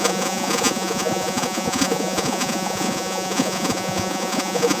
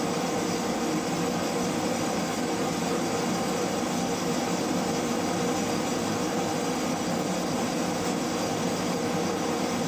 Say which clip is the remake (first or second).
first